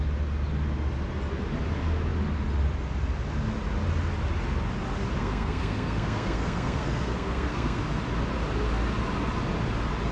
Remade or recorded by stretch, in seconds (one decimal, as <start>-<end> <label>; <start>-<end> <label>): 0.0-5.2 recorded; 5.2-7.8 remade; 7.8-10.1 recorded